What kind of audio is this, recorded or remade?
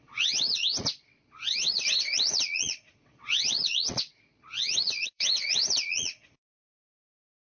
remade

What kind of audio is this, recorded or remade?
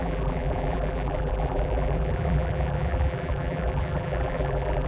remade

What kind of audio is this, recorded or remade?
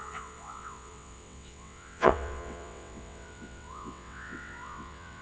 remade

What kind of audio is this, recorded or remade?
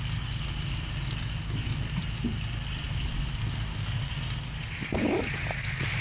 recorded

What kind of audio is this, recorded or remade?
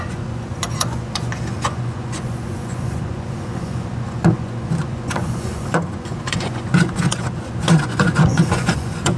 remade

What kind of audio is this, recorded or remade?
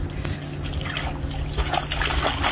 recorded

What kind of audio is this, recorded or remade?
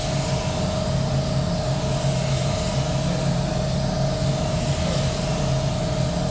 recorded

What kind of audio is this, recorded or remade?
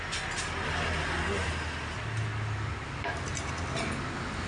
recorded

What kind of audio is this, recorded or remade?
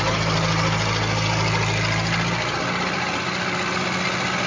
recorded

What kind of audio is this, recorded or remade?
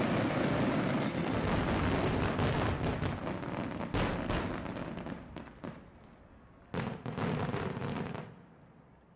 recorded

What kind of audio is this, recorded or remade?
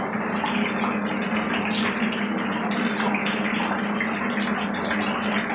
recorded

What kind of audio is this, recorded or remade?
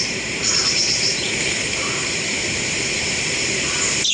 remade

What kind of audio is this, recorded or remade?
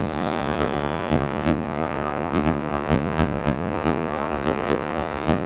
remade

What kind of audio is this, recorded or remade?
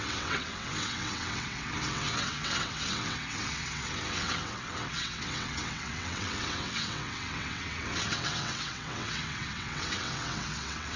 remade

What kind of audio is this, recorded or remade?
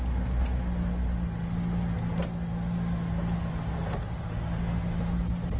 recorded